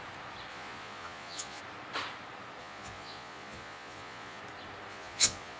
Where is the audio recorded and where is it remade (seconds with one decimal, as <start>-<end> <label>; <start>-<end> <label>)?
0.0-0.5 recorded; 0.5-1.6 remade; 1.6-2.6 recorded; 2.6-4.4 remade; 4.4-4.9 recorded; 4.9-5.6 remade